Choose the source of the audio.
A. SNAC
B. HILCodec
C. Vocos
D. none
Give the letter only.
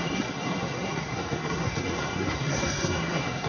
A